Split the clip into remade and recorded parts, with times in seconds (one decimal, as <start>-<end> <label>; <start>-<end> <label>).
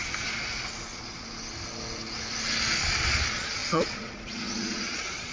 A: 0.0-2.8 recorded; 2.8-5.3 remade